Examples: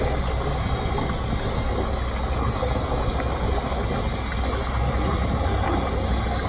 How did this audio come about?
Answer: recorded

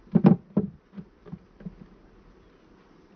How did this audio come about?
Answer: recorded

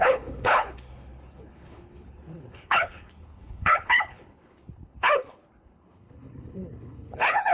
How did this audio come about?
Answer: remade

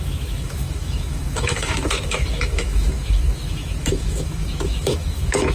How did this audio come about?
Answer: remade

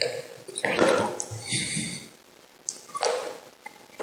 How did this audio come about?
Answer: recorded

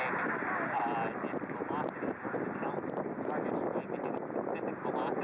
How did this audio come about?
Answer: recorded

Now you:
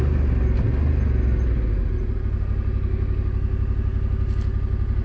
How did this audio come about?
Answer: recorded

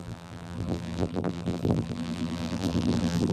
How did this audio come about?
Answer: remade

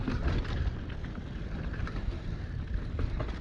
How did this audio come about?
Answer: remade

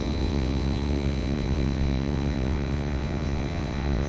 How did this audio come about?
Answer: remade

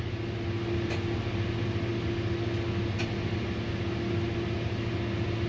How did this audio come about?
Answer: recorded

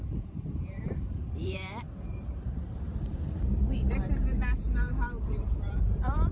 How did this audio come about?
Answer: remade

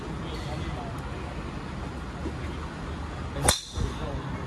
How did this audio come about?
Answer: recorded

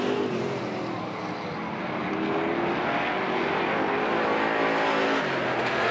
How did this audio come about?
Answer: recorded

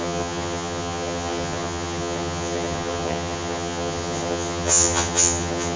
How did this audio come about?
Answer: remade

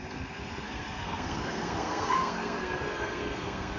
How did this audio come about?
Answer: remade